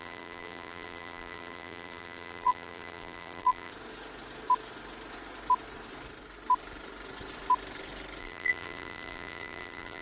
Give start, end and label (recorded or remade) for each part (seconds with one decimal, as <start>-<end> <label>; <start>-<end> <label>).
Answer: 0.0-3.7 remade; 3.7-8.2 recorded; 8.2-10.0 remade